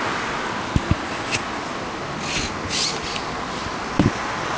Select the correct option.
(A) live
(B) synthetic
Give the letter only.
A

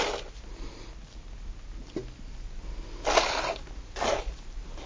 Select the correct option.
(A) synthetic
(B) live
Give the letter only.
B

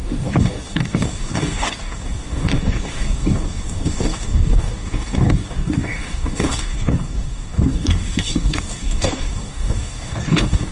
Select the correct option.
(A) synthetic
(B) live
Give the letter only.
A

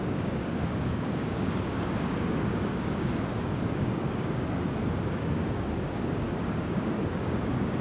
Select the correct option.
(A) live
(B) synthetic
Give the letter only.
B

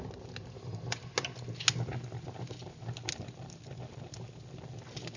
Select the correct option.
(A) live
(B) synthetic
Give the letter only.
A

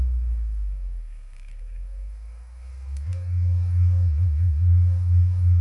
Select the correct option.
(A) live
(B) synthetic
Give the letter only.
B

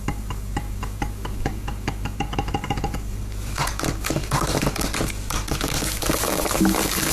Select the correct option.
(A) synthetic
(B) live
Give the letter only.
A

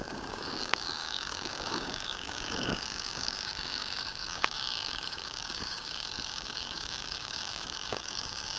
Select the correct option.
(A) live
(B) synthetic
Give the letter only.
B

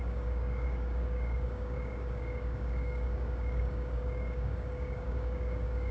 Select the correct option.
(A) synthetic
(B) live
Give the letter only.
A